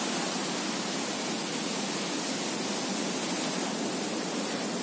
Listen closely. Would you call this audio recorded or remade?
recorded